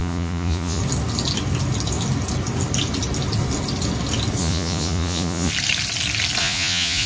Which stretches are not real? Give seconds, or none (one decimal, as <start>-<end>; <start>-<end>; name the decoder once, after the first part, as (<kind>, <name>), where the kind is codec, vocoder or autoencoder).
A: 0.0-0.8 (vocoder, Vocos); 4.4-5.5; 6.4-7.1